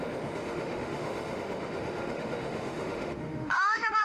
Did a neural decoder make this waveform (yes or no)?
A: yes